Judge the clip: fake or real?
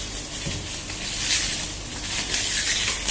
real